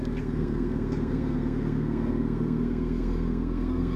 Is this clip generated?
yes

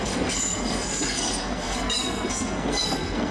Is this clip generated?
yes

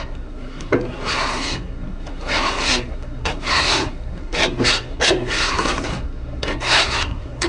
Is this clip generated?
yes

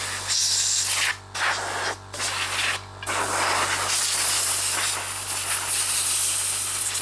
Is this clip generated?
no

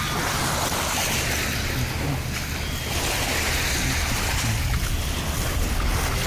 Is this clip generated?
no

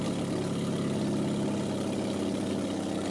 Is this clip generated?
no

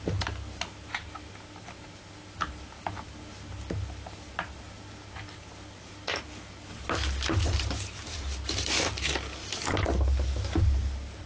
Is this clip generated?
no